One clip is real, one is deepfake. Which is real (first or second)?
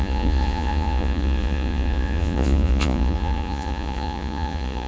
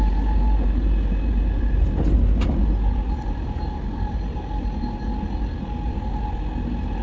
second